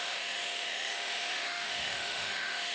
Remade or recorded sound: remade